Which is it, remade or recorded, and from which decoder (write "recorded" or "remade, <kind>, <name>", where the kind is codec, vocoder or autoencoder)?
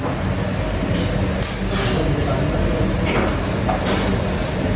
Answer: recorded